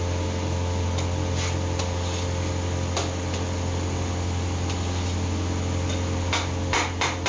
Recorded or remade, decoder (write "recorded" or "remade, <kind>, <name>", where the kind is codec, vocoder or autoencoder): recorded